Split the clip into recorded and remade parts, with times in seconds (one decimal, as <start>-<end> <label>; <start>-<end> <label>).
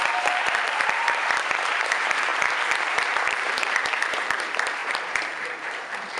0.0-1.2 remade; 1.2-1.8 recorded; 1.8-6.2 remade